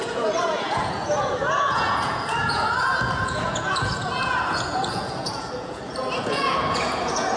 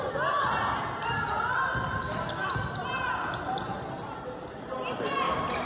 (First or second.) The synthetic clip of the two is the first